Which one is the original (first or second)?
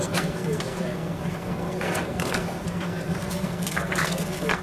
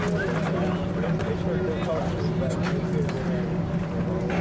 second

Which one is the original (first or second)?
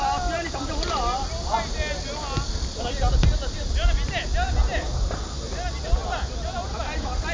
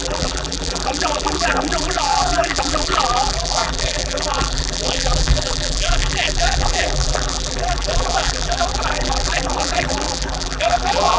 first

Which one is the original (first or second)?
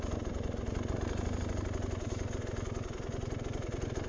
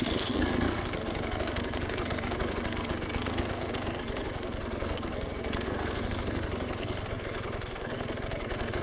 first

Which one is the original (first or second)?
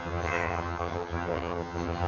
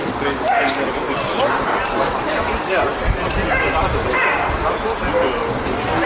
second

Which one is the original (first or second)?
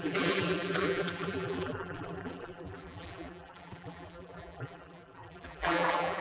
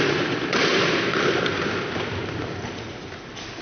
second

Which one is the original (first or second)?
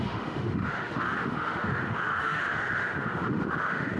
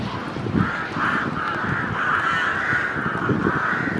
second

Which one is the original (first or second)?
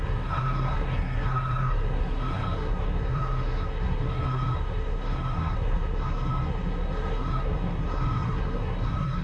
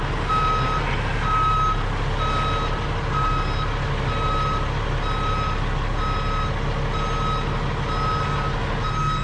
second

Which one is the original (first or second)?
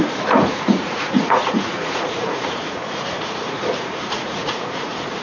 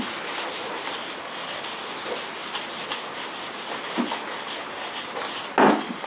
second